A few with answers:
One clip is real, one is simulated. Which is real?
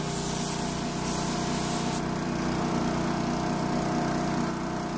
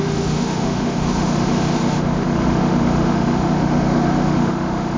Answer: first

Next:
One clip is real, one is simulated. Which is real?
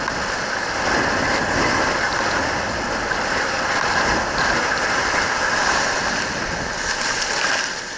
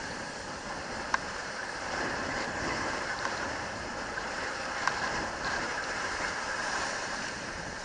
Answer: first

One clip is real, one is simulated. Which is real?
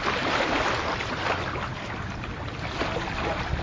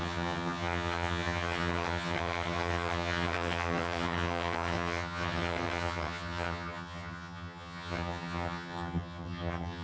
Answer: first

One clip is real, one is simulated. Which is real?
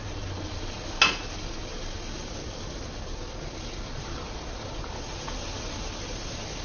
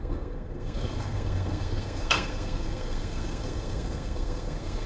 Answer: first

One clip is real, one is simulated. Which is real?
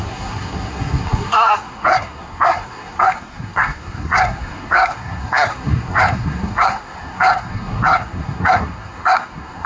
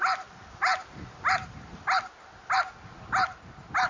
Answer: second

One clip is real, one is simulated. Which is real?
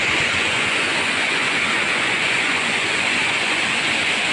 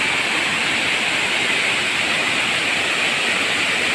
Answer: second